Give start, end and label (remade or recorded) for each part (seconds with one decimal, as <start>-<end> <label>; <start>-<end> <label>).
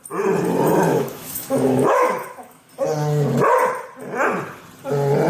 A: 0.0-0.9 recorded; 0.9-2.7 remade; 2.7-5.3 recorded